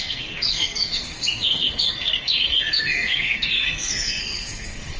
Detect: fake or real fake